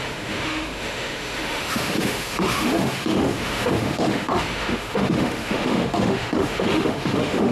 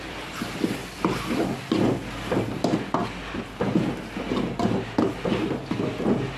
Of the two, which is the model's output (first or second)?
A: first